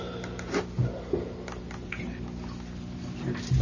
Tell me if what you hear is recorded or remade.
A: recorded